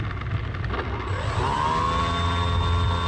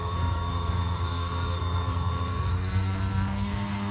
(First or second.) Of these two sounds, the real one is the first